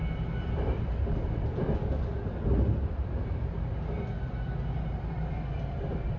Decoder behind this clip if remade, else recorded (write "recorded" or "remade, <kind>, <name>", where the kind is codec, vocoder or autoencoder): recorded